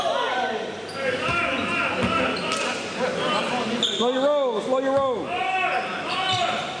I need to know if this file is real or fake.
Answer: real